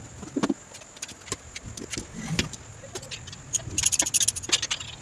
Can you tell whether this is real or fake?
real